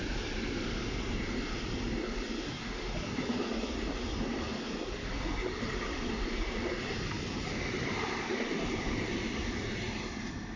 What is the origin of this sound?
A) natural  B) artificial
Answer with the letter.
A